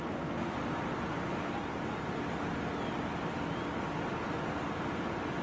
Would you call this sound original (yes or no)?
yes